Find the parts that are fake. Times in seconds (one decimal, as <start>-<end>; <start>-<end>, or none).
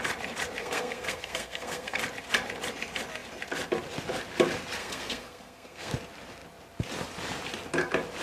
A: 0.6-2.0; 4.8-5.9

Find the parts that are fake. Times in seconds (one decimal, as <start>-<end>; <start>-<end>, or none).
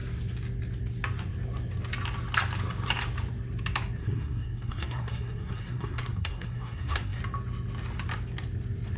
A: 4.0-7.2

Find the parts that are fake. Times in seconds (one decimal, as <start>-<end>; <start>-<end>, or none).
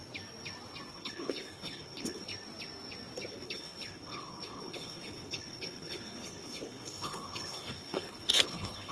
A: 0.9-2.3; 3.3-8.9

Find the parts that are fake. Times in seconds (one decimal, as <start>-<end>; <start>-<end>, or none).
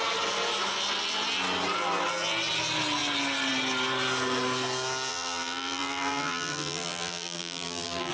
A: 5.1-8.1